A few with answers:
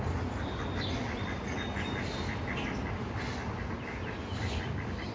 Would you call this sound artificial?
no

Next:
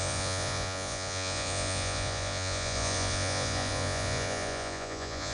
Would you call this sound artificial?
yes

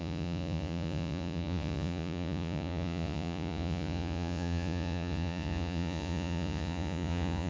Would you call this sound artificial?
yes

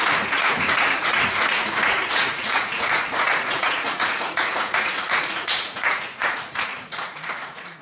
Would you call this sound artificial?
yes